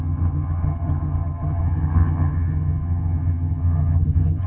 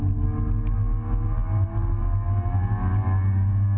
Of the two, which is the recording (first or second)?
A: second